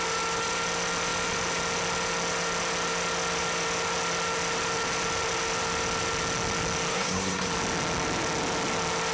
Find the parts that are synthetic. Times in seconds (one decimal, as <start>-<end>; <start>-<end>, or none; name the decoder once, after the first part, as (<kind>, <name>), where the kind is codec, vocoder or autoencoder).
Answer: 6.9-7.5 (codec, SNAC)